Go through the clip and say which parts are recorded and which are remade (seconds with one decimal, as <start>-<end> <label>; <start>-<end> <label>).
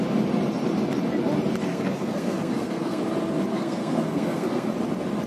0.0-1.7 recorded; 1.7-3.0 remade; 3.0-3.5 recorded; 3.5-4.7 remade; 4.7-5.3 recorded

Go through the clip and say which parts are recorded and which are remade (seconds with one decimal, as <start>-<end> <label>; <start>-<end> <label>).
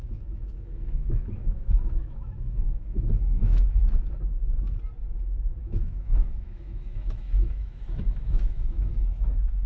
0.0-3.8 remade; 3.8-5.6 recorded; 5.6-9.7 remade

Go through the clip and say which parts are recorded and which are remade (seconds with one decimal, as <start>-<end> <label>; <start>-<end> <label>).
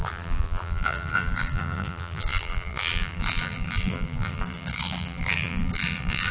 0.0-6.3 remade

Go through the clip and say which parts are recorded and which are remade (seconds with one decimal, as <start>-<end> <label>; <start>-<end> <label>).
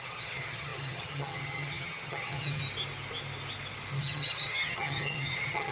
0.0-2.6 remade; 2.6-4.0 recorded; 4.0-5.7 remade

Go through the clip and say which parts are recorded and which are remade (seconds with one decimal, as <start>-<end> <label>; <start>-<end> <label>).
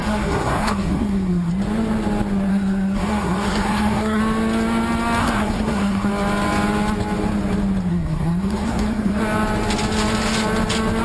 0.0-1.5 remade; 1.5-2.5 recorded; 2.5-4.2 remade; 4.2-5.2 recorded; 5.2-6.1 remade; 6.1-7.9 recorded; 7.9-9.2 remade; 9.2-11.0 recorded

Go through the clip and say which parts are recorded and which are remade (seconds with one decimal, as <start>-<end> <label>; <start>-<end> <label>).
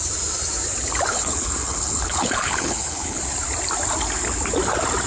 0.0-1.1 recorded; 1.1-3.2 remade; 3.2-5.1 recorded